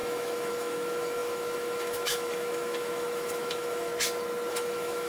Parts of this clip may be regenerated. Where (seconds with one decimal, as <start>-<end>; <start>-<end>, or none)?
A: 0.0-3.9; 4.5-5.1